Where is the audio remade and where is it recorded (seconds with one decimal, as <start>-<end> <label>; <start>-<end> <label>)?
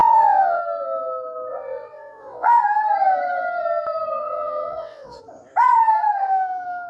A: 0.0-0.6 remade; 0.6-1.5 recorded; 1.5-2.6 remade; 2.6-4.2 recorded; 4.2-5.2 remade; 5.2-6.9 recorded